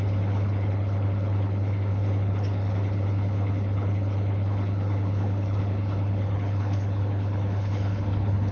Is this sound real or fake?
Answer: fake